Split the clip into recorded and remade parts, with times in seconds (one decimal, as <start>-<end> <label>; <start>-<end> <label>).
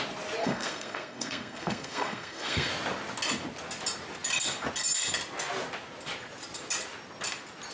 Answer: 0.0-0.4 recorded; 0.4-2.7 remade; 2.7-7.7 recorded